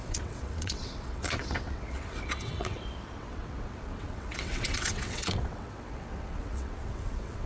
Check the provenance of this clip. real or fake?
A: fake